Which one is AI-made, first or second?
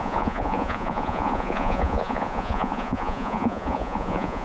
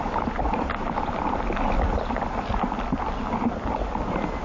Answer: first